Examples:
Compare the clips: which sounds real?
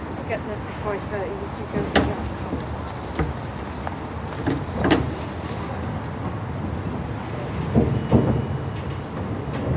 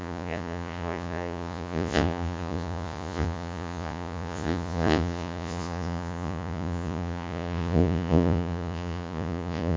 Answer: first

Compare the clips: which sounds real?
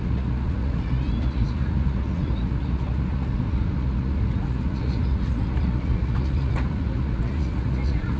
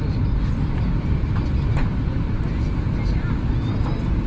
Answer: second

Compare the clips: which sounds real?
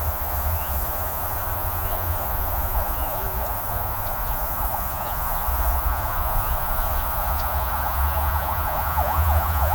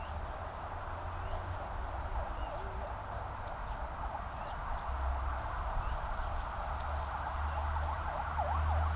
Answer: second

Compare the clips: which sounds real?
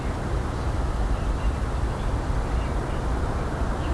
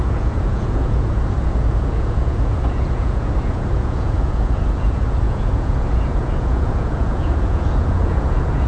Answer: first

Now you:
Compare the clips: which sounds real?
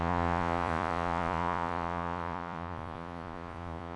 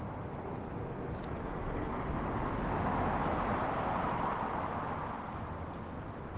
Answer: second